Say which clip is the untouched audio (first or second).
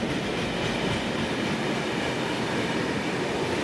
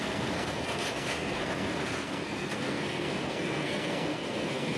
first